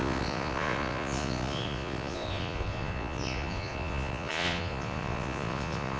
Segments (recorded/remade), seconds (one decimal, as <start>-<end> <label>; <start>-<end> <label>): 0.0-6.0 remade